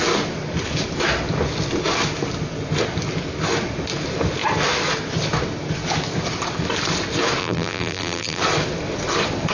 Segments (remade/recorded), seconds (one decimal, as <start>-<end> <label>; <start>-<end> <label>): 0.0-7.4 recorded; 7.4-8.4 remade; 8.4-9.5 recorded